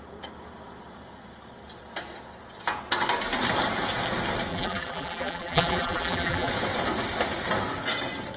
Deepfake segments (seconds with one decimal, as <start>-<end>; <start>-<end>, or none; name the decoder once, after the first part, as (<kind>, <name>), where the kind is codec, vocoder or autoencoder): 4.5-6.5 (vocoder, BigVGAN v2)